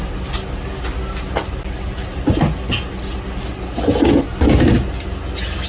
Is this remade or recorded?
recorded